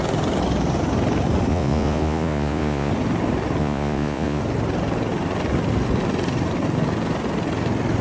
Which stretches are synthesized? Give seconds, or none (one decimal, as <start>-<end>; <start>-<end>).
1.5-2.9; 3.6-4.4